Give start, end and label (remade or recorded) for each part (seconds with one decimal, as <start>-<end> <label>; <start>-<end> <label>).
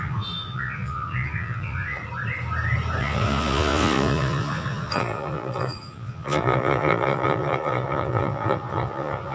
0.0-2.0 remade; 2.0-3.0 recorded; 3.0-9.3 remade